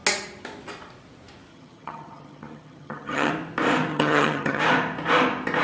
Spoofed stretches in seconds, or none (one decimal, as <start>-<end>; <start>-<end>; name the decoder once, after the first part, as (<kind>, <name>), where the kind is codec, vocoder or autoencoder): 1.5-3.3 (vocoder, HiFi-GAN); 3.9-4.6